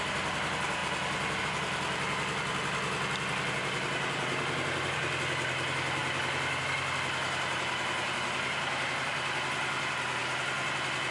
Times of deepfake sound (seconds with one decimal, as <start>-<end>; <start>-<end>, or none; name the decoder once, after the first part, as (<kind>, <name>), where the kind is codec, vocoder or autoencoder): none